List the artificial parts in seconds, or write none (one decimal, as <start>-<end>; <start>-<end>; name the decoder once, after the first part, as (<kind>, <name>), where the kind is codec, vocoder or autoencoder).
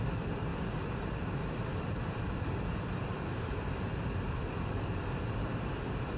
0.0-6.2 (vocoder, BigVGAN v2)